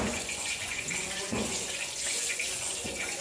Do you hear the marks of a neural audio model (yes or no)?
yes